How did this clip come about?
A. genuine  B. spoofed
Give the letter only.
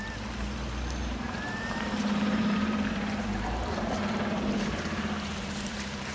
B